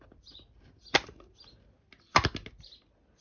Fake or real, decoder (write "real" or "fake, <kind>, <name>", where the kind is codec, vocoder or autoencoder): real